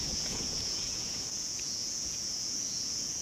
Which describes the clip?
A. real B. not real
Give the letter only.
B